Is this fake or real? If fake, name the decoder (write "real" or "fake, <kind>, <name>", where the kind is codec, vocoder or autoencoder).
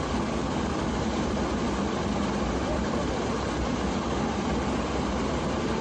real